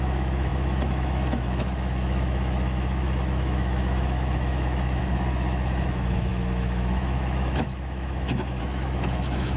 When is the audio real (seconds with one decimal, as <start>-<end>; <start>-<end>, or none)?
none